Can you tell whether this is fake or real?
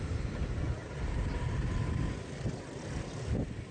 real